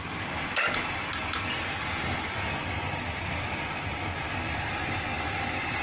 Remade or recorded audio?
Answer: recorded